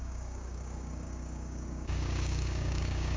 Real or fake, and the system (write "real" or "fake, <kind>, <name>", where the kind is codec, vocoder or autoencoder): fake, codec, DAC